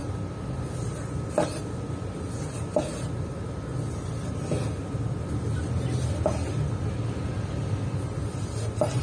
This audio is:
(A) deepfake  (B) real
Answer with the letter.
B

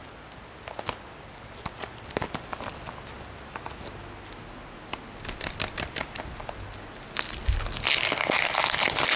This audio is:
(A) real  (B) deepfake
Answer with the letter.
A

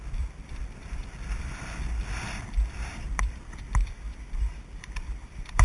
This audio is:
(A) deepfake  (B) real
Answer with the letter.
A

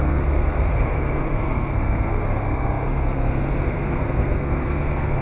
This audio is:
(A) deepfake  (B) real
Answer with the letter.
A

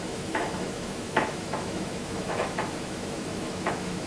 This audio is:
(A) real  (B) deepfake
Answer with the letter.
B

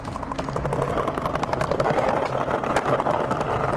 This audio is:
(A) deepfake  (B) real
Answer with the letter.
B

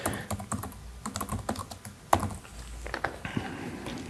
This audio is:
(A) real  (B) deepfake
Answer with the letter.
A